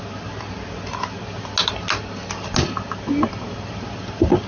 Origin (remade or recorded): recorded